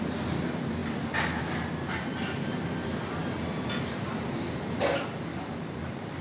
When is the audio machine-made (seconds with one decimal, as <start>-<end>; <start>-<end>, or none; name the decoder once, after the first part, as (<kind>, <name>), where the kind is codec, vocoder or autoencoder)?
5.3-6.2 (codec, DAC)